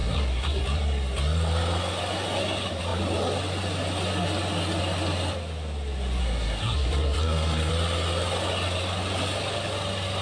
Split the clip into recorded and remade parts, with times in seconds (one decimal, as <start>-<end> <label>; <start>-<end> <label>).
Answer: 0.0-0.6 remade; 0.6-6.2 recorded; 6.2-7.7 remade; 7.7-10.2 recorded